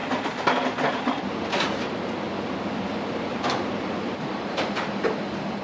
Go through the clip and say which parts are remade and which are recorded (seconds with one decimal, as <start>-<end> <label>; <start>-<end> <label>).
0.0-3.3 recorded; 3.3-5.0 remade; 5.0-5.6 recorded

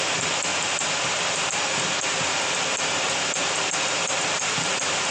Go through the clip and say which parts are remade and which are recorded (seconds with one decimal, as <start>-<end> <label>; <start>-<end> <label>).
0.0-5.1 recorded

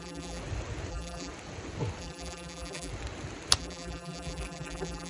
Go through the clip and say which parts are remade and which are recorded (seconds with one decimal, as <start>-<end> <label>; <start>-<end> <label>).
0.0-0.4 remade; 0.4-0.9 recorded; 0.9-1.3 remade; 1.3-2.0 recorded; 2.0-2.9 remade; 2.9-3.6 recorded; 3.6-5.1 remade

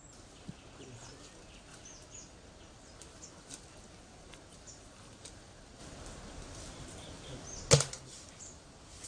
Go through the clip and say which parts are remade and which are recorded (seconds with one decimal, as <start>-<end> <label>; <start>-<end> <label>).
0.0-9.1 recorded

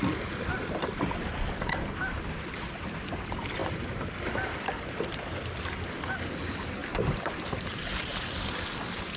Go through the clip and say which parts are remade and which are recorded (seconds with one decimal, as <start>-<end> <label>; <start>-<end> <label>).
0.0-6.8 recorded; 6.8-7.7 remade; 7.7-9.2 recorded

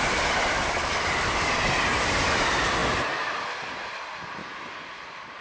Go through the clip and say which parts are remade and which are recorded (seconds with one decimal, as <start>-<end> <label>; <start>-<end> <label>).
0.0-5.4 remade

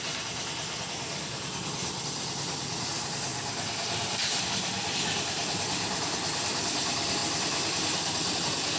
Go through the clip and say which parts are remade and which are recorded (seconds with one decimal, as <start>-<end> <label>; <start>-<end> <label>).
0.0-8.8 remade